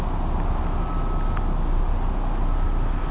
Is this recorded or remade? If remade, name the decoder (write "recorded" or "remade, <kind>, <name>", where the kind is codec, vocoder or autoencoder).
recorded